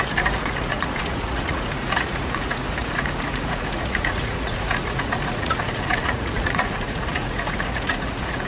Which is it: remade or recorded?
remade